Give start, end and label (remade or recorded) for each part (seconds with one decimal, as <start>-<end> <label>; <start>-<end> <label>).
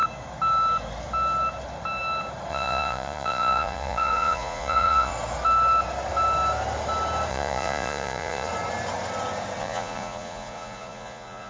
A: 0.0-2.5 recorded; 2.5-5.1 remade; 5.1-7.3 recorded; 7.3-8.5 remade; 8.5-9.6 recorded; 9.6-11.5 remade